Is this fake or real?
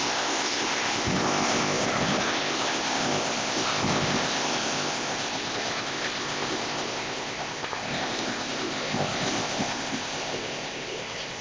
fake